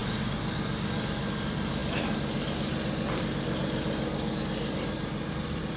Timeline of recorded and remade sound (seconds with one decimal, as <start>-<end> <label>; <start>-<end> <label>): 0.0-5.8 recorded

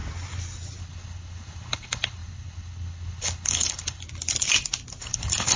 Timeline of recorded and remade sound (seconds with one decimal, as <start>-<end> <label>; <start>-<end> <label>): 0.0-0.8 recorded; 0.8-4.0 remade; 4.0-5.0 recorded; 5.0-5.6 remade

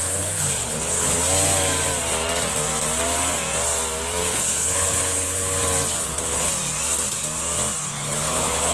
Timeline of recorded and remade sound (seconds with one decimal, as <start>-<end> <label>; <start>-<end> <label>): 0.0-1.2 remade; 1.2-4.2 recorded; 4.2-5.4 remade; 5.4-6.0 recorded; 6.0-6.5 remade; 6.5-7.8 recorded; 7.8-8.7 remade

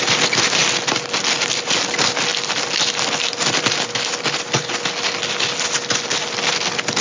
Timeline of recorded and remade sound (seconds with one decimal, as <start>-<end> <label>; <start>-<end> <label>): 0.0-7.0 recorded

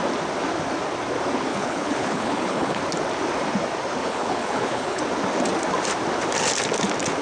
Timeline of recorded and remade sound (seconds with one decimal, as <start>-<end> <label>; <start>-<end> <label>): 0.0-1.5 recorded; 1.5-2.8 remade; 2.8-4.0 recorded; 4.0-5.0 remade; 5.0-7.2 recorded

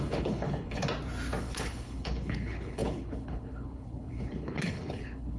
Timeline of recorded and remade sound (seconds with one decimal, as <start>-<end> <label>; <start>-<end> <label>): 0.0-0.8 remade; 0.8-1.4 recorded; 1.4-5.4 remade

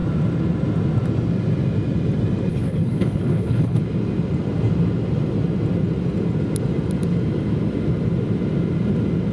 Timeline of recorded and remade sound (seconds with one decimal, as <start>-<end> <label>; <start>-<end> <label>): 0.0-2.5 recorded; 2.5-3.8 remade; 3.8-9.3 recorded